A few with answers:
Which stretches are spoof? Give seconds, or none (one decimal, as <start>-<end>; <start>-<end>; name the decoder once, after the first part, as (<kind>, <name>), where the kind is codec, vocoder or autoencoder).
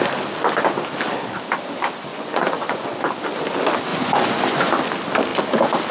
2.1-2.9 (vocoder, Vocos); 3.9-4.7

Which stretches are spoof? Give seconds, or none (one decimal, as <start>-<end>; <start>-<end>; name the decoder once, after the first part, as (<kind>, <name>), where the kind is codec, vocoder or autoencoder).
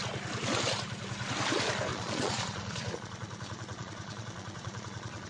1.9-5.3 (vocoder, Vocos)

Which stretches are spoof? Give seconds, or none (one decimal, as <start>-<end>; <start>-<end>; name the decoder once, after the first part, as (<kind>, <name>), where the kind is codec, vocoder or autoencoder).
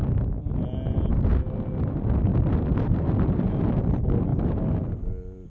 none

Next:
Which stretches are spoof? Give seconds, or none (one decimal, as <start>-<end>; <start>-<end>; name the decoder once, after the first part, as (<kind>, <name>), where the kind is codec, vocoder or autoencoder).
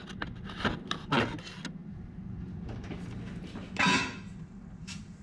none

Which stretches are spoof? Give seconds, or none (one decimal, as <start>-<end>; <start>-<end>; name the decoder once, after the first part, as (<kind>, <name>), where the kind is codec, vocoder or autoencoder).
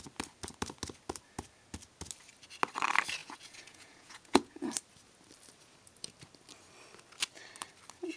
3.2-4.7 (vocoder, Vocos)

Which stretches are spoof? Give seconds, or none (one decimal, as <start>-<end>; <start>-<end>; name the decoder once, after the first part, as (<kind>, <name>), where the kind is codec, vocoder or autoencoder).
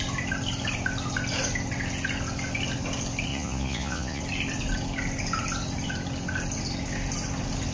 3.3-4.2 (vocoder, Vocos)